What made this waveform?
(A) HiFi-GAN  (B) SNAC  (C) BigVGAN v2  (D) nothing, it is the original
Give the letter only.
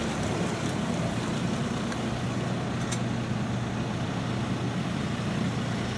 D